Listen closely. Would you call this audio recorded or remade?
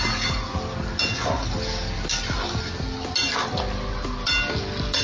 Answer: recorded